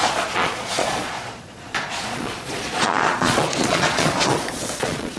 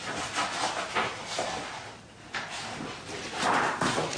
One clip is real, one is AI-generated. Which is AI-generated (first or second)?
first